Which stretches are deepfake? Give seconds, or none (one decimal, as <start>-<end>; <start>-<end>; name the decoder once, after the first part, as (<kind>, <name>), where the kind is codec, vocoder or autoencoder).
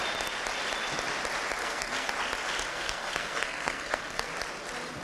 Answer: 1.6-2.1 (codec, SNAC); 2.7-4.3